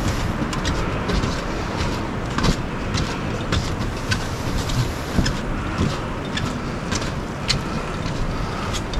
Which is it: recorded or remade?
recorded